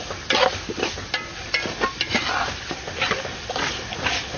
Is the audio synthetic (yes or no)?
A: no